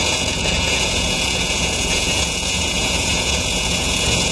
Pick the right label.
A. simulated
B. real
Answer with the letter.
A